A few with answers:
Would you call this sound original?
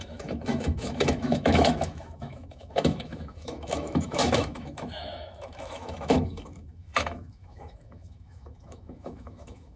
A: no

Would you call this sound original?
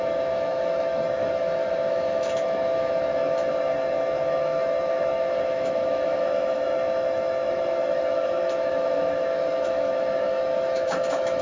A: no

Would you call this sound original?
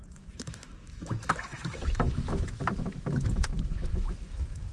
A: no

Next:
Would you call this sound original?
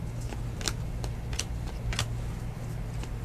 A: yes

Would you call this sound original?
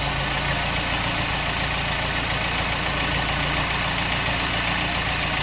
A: yes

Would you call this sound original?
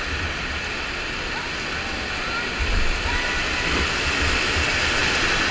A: yes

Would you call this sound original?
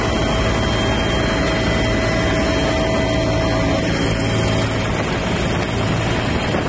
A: yes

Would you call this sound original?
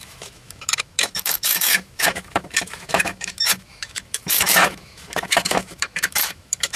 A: no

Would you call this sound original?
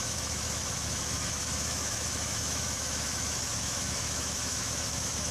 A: no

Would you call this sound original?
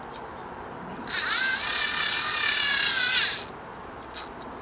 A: yes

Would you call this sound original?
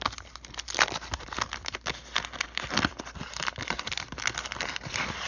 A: yes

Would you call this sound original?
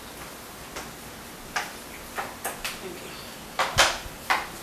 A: yes